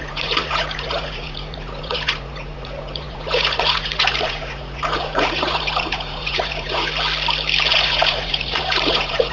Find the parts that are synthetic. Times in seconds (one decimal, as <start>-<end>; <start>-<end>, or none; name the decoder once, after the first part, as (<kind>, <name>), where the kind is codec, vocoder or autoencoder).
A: 0.0-6.9 (vocoder, Vocos); 7.7-9.3